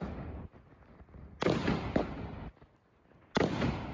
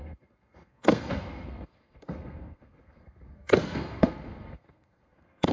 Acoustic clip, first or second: first